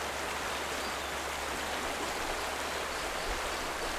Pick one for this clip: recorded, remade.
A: recorded